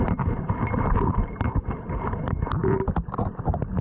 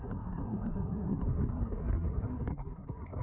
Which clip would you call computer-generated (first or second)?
second